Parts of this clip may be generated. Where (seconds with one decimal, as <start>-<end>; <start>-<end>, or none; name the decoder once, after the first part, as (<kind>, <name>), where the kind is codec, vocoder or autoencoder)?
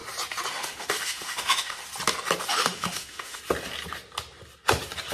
0.5-1.8 (autoencoder, DAC-VAE); 2.5-3.4